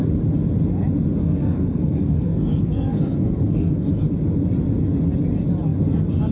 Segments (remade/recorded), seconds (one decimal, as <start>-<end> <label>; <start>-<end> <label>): 0.0-1.2 recorded; 1.2-3.9 remade; 3.9-6.3 recorded